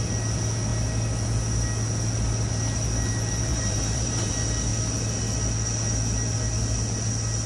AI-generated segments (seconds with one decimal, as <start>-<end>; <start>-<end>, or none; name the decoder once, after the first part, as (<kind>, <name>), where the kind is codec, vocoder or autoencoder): 3.5-4.3 (vocoder, BigVGAN v2)